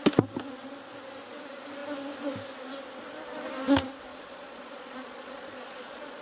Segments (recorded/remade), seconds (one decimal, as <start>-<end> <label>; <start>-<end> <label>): 0.0-4.1 recorded; 4.1-6.2 remade